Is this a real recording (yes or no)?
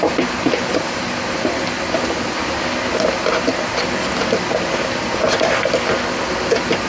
yes